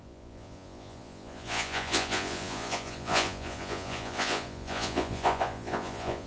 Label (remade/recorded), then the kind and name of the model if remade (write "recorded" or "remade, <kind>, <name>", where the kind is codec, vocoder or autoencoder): remade, vocoder, Vocos